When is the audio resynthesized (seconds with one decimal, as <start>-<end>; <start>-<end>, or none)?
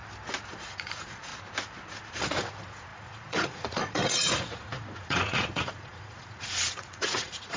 0.5-1.3; 2.1-7.6